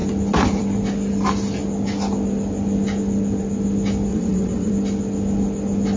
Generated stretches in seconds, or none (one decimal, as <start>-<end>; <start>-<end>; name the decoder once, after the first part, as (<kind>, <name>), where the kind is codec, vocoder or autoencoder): 4.1-4.7 (vocoder, WaveNeXt)

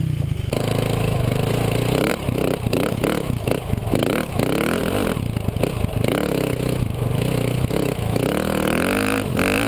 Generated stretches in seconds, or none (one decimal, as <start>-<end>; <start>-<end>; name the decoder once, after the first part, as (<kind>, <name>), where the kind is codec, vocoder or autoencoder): 0.0-2.1 (autoencoder, DAC-VAE); 2.9-4.8; 6.0-9.7

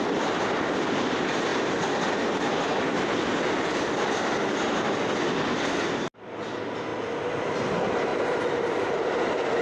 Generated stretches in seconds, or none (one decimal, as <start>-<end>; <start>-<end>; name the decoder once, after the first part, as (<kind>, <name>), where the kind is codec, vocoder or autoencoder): 8.1-9.0 (vocoder, BigVGAN v2)

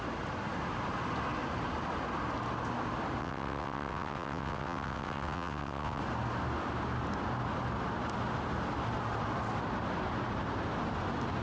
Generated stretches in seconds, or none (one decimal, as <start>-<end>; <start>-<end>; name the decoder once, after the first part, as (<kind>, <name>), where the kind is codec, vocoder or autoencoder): 3.2-6.0 (vocoder, WaveNeXt)

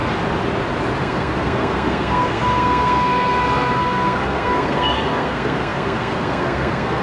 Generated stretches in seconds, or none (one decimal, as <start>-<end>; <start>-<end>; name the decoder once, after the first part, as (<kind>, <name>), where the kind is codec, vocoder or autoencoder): 1.0-7.0 (codec, SNAC)

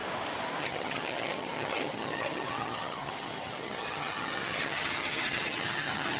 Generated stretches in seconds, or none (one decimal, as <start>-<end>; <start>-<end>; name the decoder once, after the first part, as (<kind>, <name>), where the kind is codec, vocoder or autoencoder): 0.6-6.2 (vocoder, HiFi-GAN)

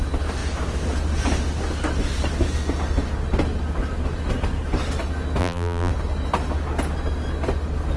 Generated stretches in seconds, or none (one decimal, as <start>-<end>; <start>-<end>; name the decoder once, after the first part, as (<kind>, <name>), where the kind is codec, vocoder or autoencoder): 5.4-5.9 (vocoder, BigVGAN v2)

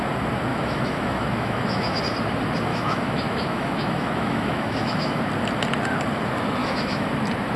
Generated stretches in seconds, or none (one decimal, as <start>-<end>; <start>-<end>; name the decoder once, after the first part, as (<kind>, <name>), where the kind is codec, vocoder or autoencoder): 0.5-2.0 (autoencoder, DAC-VAE); 2.7-5.2; 6.6-7.1